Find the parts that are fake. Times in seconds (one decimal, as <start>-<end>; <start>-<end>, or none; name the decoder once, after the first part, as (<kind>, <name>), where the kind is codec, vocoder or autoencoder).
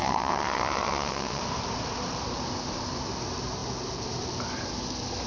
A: 0.0-1.4 (vocoder, WaveNeXt)